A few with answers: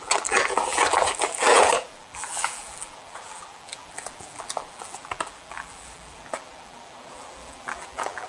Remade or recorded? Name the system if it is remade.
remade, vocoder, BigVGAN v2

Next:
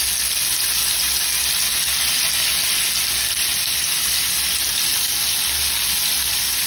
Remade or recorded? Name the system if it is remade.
recorded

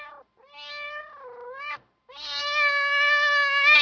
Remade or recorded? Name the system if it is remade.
recorded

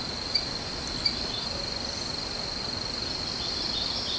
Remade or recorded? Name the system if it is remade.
recorded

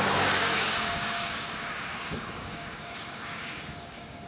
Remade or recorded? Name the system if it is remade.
remade, codec, DAC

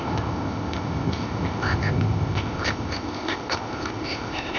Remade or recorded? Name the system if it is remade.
remade, codec, ZipCodec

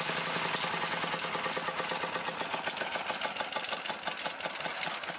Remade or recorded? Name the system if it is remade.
recorded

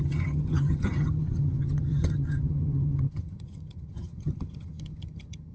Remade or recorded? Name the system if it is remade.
remade, vocoder, HiFi-GAN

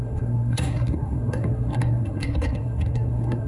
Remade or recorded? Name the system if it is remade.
remade, codec, SNAC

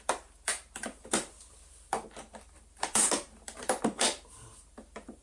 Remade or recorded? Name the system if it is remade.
remade, vocoder, BigVGAN v2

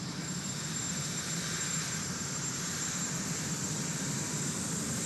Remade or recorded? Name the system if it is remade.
remade, vocoder, BigVGAN v2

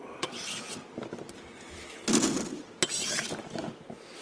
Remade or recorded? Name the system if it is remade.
recorded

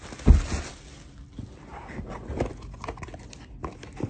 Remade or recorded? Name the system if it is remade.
recorded